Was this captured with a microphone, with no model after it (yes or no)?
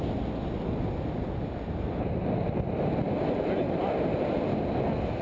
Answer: yes